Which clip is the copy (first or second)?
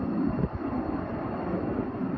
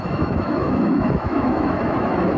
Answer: second